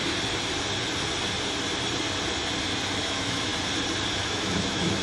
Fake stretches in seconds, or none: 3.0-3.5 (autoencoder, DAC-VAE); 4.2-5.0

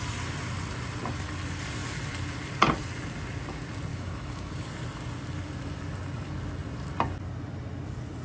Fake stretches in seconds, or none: 3.9-4.5 (autoencoder, DAC-VAE)

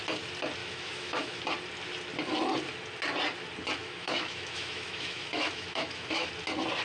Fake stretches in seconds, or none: 0.6-1.4 (autoencoder, DAC-VAE); 3.8-6.3

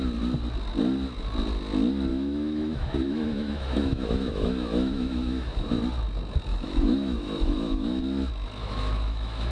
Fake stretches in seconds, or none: 2.1-5.8 (autoencoder, DAC-VAE); 6.5-8.0; 8.6-9.5

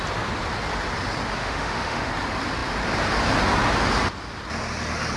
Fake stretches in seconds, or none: 1.4-2.1 (autoencoder, DAC-VAE)

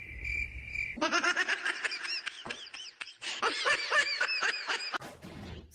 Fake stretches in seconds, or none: 4.0-4.8 (autoencoder, DAC-VAE)